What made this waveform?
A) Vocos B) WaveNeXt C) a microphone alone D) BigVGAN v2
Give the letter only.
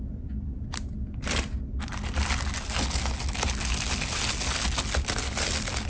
C